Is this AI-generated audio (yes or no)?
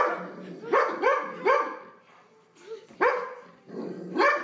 no